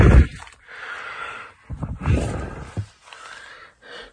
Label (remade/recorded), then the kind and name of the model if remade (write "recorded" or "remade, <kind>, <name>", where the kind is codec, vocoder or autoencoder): recorded